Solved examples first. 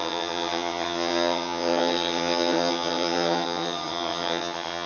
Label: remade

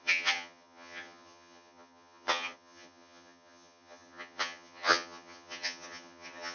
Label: remade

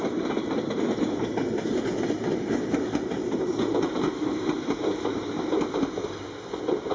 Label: recorded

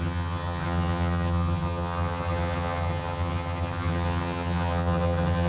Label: remade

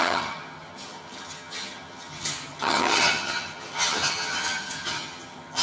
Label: remade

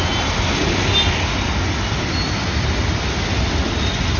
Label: recorded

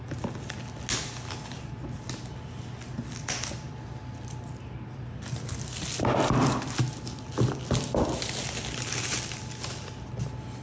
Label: recorded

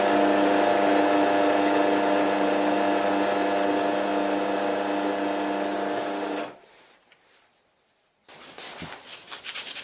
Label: recorded